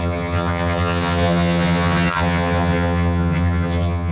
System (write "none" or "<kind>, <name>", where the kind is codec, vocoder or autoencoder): vocoder, HiFi-GAN